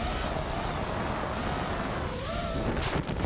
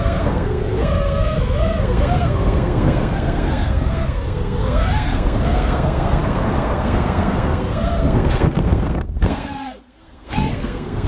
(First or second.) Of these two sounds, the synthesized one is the second